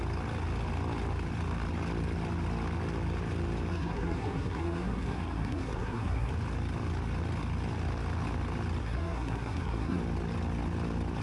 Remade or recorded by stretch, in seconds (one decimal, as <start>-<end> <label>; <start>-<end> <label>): 0.0-3.7 recorded; 3.7-6.3 remade; 6.3-8.8 recorded; 8.8-10.0 remade; 10.0-11.2 recorded